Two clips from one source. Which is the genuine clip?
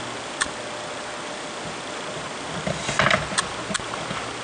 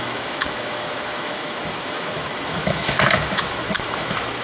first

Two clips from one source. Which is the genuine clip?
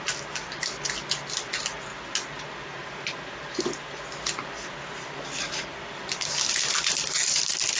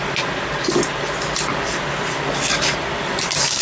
first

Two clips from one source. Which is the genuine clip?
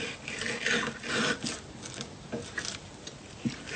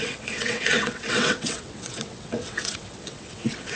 first